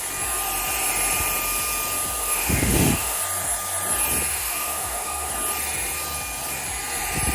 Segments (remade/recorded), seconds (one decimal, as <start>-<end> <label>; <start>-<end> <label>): 0.0-2.2 recorded; 2.2-3.2 remade; 3.2-4.3 recorded; 4.3-5.3 remade; 5.3-7.3 recorded